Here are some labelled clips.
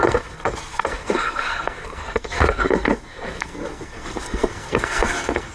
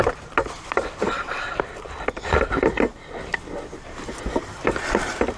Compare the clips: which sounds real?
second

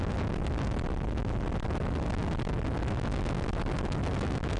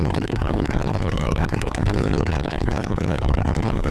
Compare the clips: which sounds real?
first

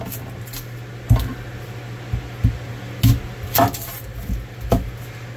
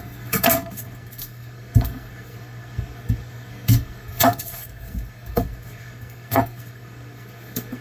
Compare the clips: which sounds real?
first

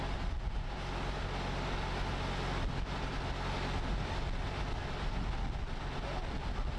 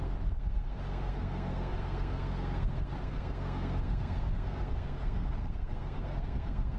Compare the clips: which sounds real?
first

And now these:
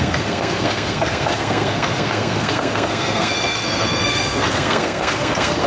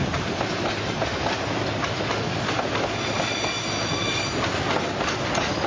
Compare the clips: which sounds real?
second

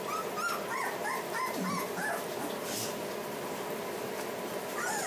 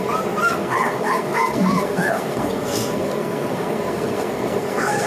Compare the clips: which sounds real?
first